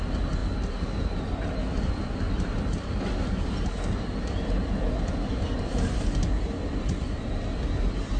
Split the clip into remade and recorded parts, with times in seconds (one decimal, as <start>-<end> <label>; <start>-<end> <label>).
0.0-8.2 recorded